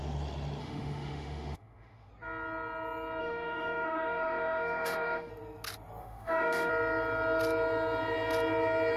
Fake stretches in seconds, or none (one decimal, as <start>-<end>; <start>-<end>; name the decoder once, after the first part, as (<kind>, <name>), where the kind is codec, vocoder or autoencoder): 0.6-2.1 (autoencoder, DAC-VAE); 3.2-5.3; 6.0-6.7